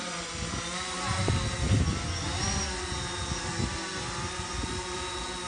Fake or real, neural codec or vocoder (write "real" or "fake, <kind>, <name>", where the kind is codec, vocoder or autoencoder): real